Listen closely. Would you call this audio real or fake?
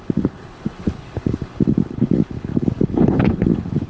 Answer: fake